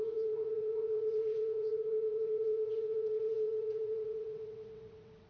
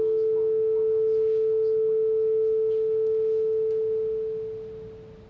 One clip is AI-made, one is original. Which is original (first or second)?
second